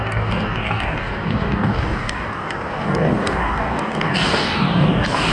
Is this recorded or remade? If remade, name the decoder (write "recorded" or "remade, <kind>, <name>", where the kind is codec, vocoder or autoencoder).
remade, codec, DAC